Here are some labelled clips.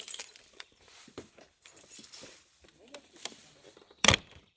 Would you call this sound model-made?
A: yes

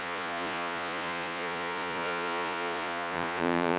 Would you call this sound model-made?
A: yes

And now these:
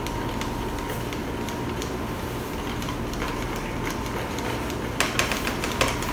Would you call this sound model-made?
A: no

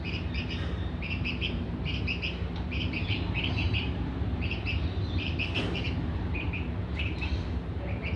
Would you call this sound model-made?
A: yes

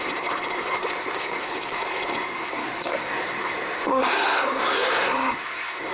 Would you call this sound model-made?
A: yes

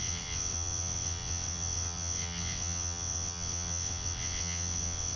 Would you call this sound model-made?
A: yes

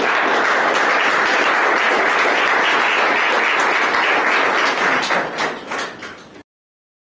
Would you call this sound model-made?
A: no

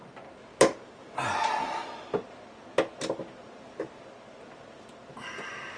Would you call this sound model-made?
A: no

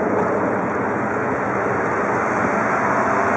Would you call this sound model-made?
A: no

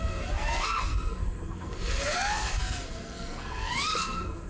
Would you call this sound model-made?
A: yes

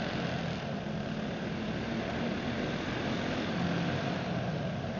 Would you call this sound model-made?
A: no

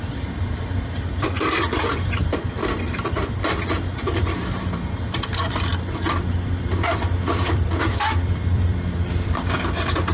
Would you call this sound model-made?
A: yes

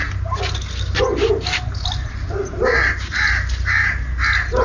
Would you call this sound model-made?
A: no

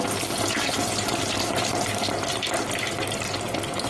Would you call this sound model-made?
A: no